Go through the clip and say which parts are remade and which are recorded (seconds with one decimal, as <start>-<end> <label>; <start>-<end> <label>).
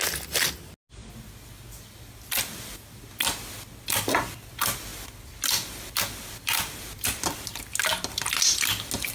0.0-9.1 recorded